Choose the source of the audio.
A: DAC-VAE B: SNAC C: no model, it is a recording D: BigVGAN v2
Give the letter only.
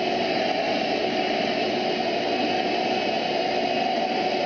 C